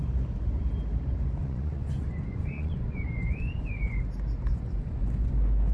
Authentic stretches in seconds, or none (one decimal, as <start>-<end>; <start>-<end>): 0.0-1.4; 4.0-4.5; 5.3-5.7